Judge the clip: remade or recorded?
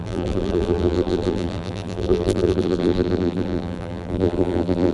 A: remade